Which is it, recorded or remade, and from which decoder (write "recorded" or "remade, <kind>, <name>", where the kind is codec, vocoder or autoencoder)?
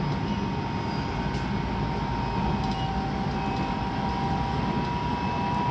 recorded